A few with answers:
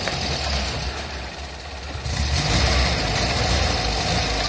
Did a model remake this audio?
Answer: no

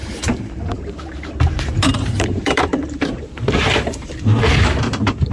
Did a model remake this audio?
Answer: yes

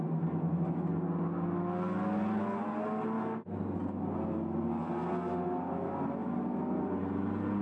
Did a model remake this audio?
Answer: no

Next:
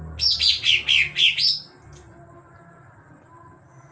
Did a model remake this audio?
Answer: no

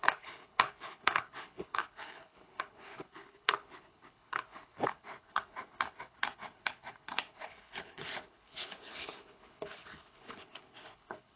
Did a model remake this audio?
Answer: yes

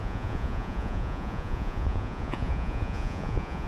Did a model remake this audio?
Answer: yes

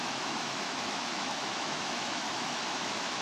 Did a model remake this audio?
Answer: yes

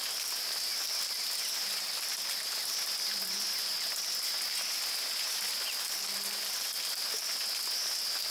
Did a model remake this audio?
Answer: no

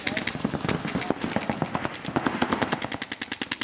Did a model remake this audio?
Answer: no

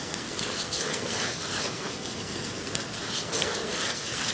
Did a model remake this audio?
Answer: yes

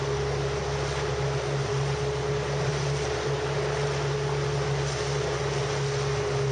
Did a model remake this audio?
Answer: no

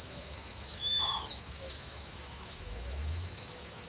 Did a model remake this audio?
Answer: yes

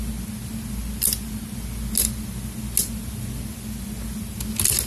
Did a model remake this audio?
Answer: no